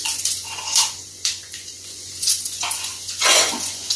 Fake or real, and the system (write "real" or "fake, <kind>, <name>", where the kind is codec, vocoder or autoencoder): fake, vocoder, Vocos